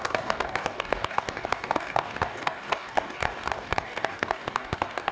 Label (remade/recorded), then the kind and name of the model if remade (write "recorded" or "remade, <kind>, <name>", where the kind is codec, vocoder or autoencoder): remade, codec, DAC